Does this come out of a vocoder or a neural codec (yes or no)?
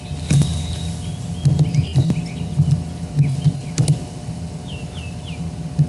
no